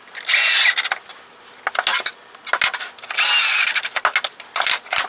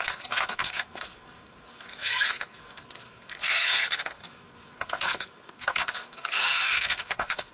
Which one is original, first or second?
first